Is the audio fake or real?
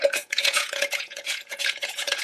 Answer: fake